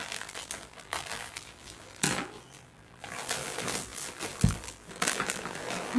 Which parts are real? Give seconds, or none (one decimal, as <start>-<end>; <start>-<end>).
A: none